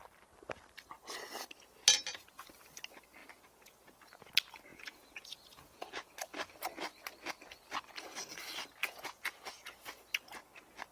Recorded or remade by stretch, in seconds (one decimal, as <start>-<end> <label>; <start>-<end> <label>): 0.0-3.2 recorded; 3.2-4.3 remade; 4.3-4.7 recorded; 4.7-6.1 remade; 6.1-8.8 recorded; 8.8-9.7 remade; 9.7-10.9 recorded